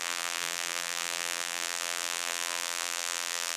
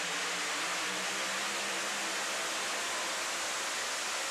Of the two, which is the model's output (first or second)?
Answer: first